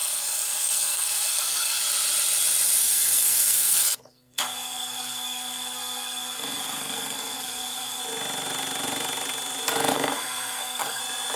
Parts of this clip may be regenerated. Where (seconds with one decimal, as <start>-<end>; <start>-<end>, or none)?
0.0-1.8; 2.8-8.0; 9.9-11.0